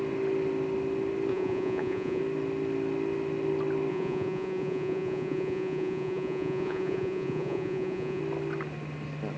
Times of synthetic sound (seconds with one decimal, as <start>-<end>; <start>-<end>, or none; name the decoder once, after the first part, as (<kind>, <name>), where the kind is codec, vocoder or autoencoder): 1.3-2.2 (vocoder, Vocos); 3.9-8.2